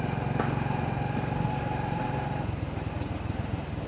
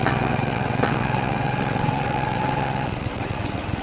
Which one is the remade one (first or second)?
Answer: second